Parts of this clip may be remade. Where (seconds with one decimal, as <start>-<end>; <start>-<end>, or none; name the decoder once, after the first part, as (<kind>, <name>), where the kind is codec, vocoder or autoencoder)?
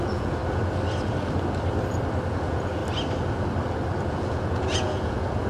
0.0-0.4 (vocoder, Vocos); 2.3-2.8; 4.1-5.5